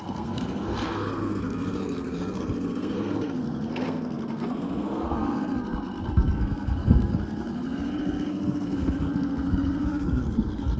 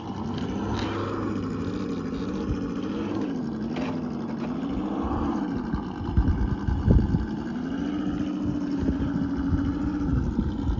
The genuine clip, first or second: second